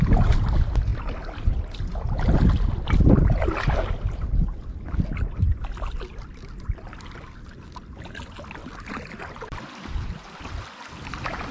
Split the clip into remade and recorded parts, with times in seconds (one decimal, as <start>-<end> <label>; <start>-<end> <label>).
0.0-11.5 recorded